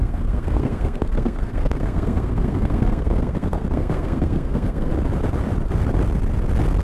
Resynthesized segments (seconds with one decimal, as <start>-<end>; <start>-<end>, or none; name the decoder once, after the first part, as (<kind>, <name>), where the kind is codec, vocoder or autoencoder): 0.0-4.9 (codec, SNAC)